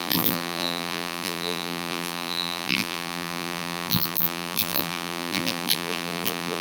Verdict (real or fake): fake